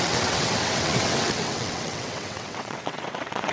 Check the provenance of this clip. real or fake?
fake